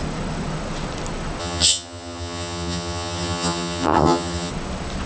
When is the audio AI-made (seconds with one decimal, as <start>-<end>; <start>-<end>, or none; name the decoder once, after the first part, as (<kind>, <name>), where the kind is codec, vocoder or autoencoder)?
1.4-4.5 (vocoder, HiFi-GAN)